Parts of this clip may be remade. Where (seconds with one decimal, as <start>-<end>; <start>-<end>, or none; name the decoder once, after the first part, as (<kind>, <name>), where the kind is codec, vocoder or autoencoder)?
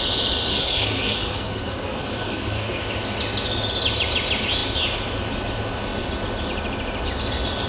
0.5-2.8 (codec, SNAC)